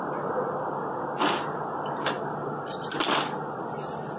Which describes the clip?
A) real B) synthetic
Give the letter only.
A